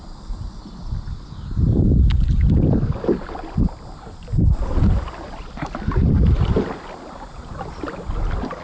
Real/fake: real